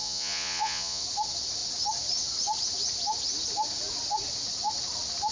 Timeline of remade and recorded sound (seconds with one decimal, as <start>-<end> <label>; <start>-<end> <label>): 0.0-1.0 remade; 1.0-5.3 recorded